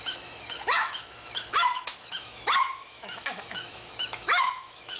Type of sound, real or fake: fake